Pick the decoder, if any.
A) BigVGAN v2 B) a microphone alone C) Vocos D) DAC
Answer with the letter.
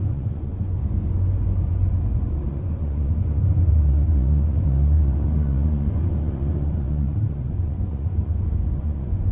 C